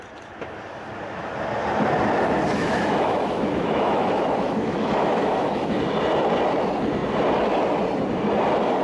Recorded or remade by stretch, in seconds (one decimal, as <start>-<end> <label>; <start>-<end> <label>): 0.0-2.5 recorded; 2.5-5.8 remade; 5.8-8.8 recorded